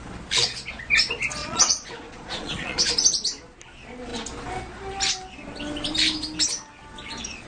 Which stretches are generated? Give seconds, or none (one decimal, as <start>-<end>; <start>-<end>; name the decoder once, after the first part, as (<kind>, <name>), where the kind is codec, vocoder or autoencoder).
1.4-2.9 (vocoder, Vocos)